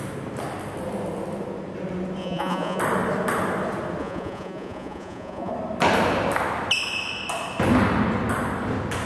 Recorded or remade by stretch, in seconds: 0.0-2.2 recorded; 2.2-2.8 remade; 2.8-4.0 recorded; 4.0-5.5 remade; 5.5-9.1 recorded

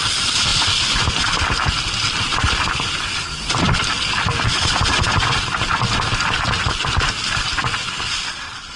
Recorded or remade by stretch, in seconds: 0.0-0.5 recorded; 0.5-5.3 remade; 5.3-8.8 recorded

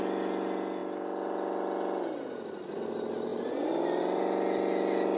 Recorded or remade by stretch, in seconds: 0.0-5.2 recorded

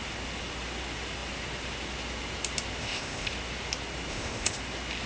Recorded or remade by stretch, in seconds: 0.0-2.8 recorded; 2.8-3.3 remade; 3.3-4.1 recorded; 4.1-4.6 remade; 4.6-5.1 recorded